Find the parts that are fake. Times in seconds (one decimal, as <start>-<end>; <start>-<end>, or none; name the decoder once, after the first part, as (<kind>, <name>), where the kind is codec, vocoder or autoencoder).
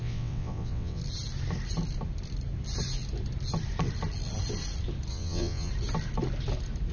0.0-1.0 (vocoder, WaveNeXt); 5.1-5.7